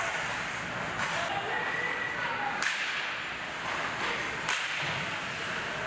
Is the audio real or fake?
real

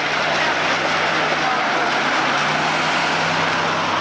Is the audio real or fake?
real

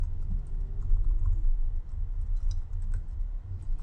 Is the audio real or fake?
real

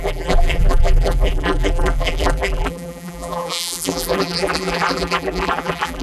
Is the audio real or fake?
fake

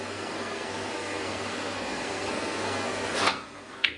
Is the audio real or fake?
fake